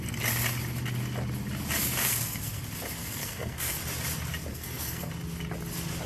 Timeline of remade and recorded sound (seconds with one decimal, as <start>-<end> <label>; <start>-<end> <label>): 0.0-2.0 recorded; 2.0-2.6 remade; 2.6-3.0 recorded; 3.0-3.8 remade; 3.8-4.5 recorded; 4.5-5.1 remade; 5.1-6.1 recorded